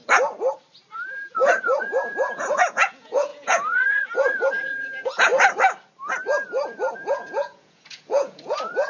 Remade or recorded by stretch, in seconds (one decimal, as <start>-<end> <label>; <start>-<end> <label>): 0.0-1.1 recorded; 1.1-5.3 remade; 5.3-6.9 recorded; 6.9-8.9 remade